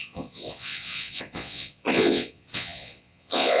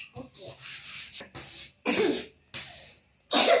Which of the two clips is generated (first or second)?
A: first